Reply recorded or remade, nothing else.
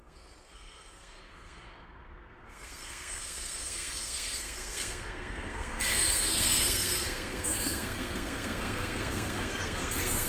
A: remade